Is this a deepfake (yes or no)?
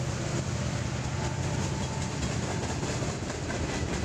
yes